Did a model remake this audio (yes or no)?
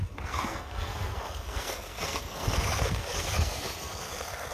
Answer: yes